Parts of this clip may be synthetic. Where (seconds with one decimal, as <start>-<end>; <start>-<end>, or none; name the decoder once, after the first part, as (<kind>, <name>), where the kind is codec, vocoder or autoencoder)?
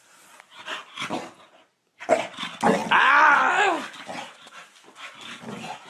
none